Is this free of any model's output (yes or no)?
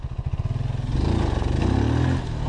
yes